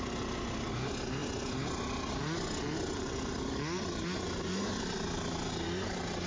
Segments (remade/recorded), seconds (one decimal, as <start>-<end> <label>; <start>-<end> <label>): 0.0-6.3 recorded